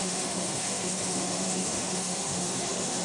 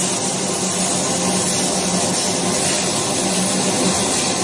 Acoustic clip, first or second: second